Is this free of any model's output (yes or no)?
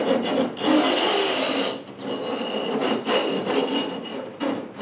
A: yes